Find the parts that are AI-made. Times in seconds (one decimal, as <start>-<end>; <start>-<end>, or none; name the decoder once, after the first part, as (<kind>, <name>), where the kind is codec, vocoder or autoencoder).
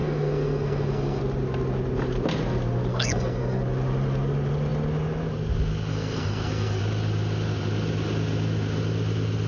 0.0-1.2 (codec, SNAC); 2.9-3.6; 5.9-6.8